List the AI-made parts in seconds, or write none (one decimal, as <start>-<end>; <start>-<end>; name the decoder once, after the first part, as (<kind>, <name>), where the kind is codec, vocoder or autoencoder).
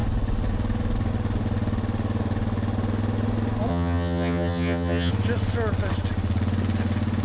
3.7-5.1 (vocoder, HiFi-GAN)